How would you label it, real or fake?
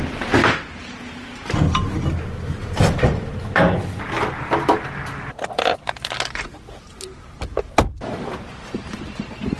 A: real